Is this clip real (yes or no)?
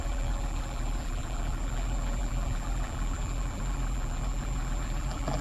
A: no